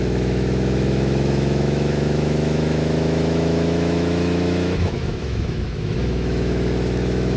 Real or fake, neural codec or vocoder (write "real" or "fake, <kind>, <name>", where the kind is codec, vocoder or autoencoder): fake, autoencoder, DAC-VAE